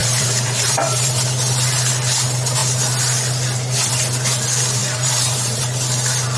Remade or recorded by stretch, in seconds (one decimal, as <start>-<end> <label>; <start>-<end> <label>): 0.0-1.1 remade; 1.1-4.8 recorded; 4.8-5.6 remade; 5.6-6.4 recorded